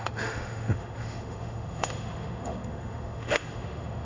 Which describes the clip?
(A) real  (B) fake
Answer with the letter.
B